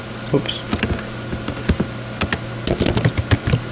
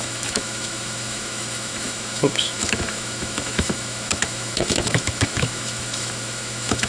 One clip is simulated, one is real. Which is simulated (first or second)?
second